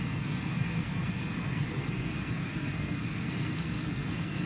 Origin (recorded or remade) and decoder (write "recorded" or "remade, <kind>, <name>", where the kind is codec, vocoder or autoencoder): remade, codec, SNAC